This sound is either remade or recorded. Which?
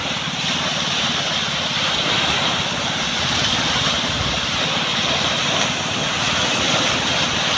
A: recorded